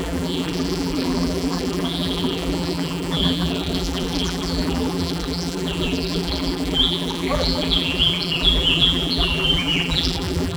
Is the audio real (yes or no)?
no